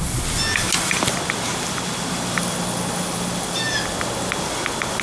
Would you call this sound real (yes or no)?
yes